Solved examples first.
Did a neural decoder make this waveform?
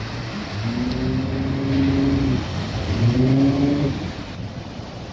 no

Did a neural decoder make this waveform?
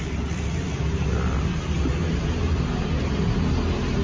no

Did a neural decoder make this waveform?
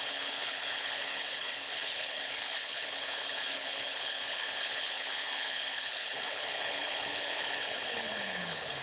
yes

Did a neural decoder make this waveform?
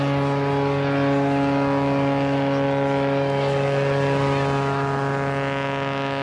no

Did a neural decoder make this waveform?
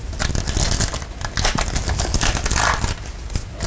no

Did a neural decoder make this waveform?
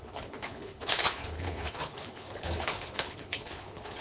yes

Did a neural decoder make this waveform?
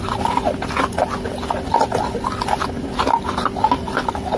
no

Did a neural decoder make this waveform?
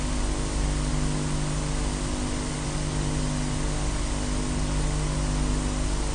no